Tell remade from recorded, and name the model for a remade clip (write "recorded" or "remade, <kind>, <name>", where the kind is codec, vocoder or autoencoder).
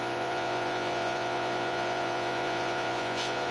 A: remade, vocoder, Vocos